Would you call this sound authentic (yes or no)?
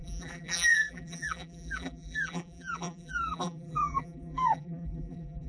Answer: no